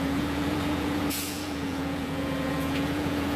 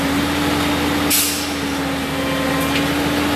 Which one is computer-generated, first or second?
first